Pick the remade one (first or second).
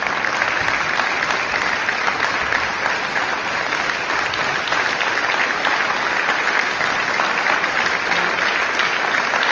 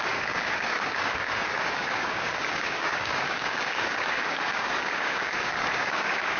second